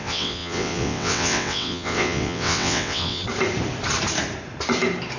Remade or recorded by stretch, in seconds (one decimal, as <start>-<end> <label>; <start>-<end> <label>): 0.0-3.2 remade; 3.2-5.2 recorded